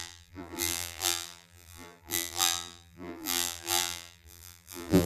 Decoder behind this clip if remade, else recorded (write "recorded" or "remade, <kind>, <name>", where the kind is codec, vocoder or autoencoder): remade, vocoder, BigVGAN v2